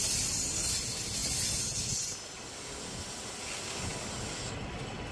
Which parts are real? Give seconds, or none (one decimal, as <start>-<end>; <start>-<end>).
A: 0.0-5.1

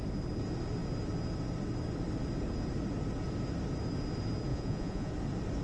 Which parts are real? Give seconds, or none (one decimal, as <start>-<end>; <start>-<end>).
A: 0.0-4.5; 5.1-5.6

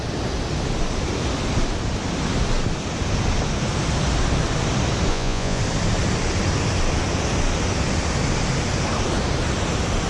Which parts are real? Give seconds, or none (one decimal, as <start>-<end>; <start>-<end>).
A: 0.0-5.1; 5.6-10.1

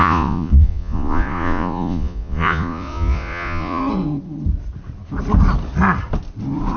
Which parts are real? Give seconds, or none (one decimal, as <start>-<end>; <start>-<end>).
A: 3.8-6.8

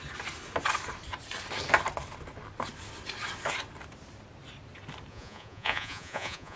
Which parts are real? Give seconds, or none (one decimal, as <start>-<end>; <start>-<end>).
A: 0.0-5.1